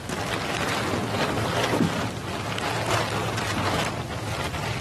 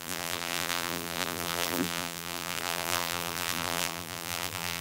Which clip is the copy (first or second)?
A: second